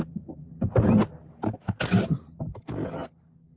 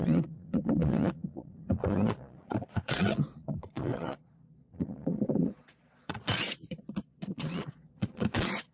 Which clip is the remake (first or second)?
second